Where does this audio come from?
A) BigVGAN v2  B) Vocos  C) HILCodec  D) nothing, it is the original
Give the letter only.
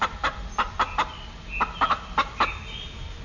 A